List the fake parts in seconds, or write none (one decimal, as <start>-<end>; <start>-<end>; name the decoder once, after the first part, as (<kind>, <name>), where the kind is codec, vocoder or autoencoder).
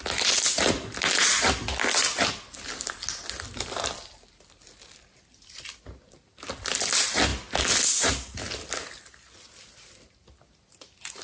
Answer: none